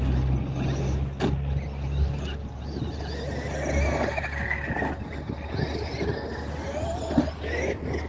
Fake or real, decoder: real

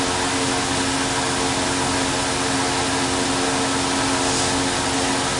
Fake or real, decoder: real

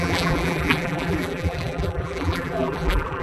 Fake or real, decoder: fake, vocoder, BigVGAN v2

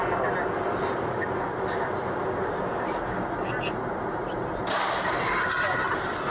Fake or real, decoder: real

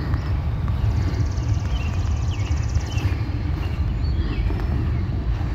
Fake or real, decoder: real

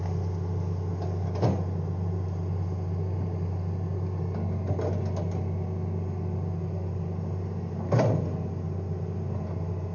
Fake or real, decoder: real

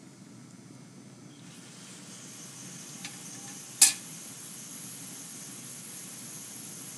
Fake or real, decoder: real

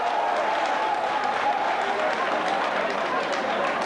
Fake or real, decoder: real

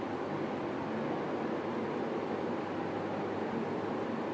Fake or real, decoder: real